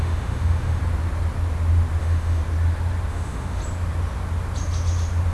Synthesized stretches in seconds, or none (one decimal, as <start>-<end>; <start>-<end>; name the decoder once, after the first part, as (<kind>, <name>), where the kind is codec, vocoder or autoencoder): 0.0-0.8 (autoencoder, DAC-VAE); 2.0-2.4; 3.1-3.6